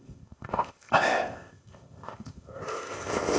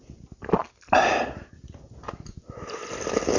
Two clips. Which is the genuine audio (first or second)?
second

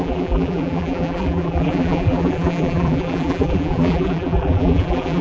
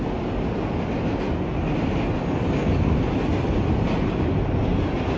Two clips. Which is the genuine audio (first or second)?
second